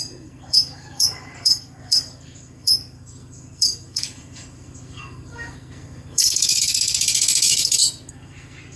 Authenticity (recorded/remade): remade